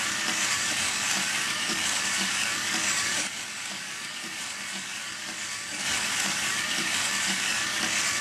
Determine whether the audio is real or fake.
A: fake